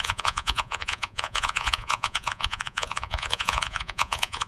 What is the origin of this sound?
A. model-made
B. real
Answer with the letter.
A